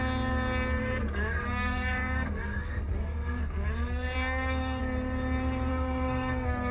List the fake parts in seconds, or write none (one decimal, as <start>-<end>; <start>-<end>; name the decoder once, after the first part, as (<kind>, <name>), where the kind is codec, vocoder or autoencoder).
0.8-4.8 (codec, SNAC); 5.7-6.7